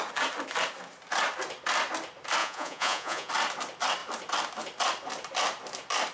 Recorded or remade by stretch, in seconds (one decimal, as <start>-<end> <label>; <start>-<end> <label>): 0.0-2.4 recorded; 2.4-3.3 remade; 3.3-6.1 recorded